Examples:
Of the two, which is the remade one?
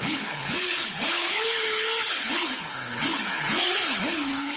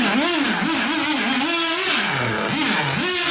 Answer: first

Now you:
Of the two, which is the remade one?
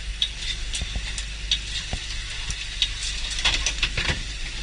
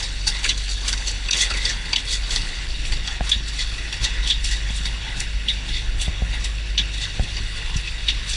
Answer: second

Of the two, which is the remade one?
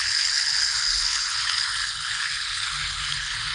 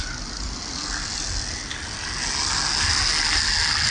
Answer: first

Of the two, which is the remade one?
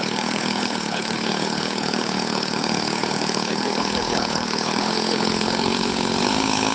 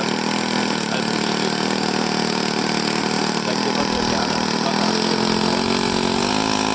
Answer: first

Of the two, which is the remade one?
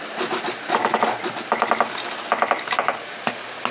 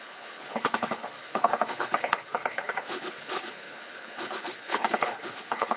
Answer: second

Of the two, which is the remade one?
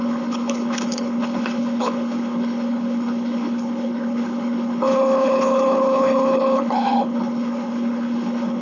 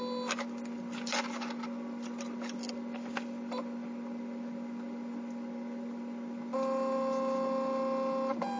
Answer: first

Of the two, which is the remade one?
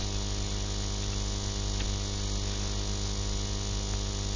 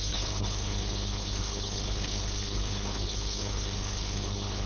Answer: second